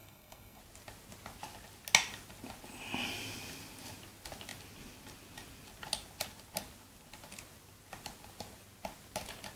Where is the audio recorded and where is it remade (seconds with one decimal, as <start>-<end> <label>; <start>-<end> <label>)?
0.0-0.6 remade; 0.6-9.6 recorded